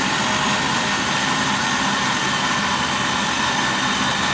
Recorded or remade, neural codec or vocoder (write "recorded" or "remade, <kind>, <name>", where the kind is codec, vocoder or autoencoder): recorded